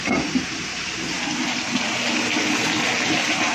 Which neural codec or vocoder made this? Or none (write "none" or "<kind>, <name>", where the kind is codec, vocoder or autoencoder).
none